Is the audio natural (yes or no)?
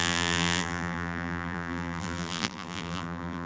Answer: no